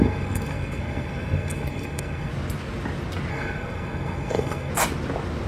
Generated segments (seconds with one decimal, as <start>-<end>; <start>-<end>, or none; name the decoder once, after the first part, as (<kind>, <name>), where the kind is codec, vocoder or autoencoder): 0.0-2.3 (codec, SNAC); 3.3-4.7